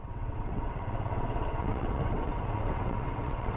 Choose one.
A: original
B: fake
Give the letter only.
B